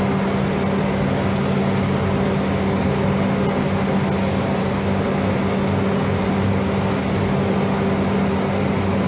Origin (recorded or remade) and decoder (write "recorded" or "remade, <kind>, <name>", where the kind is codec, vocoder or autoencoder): recorded